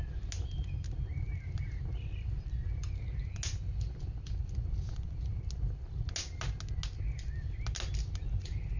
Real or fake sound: real